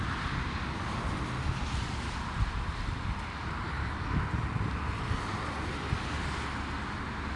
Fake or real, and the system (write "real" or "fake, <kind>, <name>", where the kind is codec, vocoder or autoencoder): real